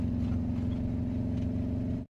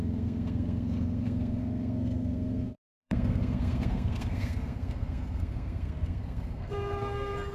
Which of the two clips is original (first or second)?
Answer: first